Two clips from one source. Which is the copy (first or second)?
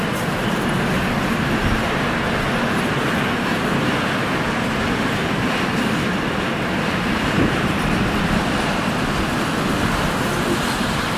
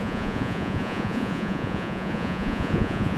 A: second